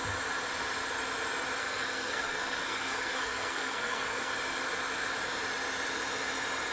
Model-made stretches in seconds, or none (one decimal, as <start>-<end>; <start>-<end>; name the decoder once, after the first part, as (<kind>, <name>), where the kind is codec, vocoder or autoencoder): 1.6-4.3 (codec, SNAC)